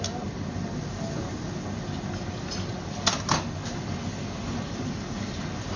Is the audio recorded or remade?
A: recorded